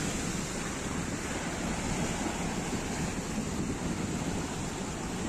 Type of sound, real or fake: real